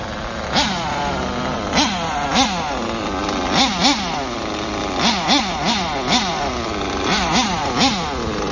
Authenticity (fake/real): real